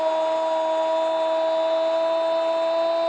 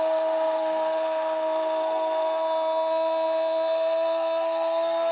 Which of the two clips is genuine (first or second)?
first